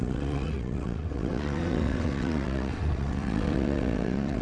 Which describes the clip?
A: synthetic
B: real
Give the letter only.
A